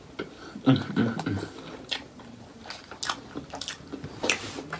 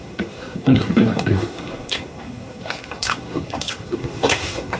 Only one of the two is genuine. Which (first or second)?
first